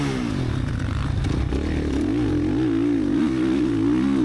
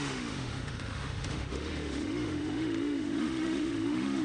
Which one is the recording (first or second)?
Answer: first